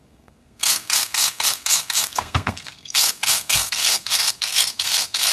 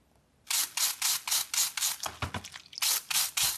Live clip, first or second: second